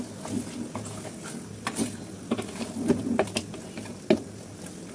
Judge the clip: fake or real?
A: real